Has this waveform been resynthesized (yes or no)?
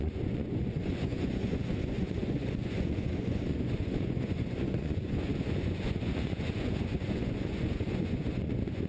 yes